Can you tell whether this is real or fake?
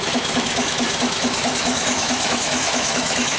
fake